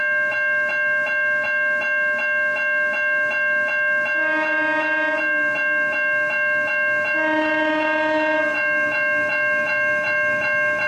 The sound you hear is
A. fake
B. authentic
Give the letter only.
B